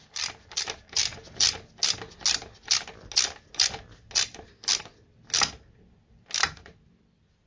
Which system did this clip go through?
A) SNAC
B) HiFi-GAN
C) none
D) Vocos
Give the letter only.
C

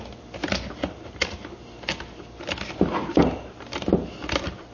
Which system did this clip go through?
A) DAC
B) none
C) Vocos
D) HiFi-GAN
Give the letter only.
B